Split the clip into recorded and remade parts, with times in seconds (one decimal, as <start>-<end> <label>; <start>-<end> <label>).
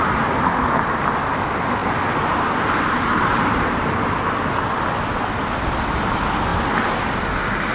0.0-7.7 recorded